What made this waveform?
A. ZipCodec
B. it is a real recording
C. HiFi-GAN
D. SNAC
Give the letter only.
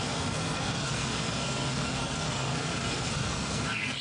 D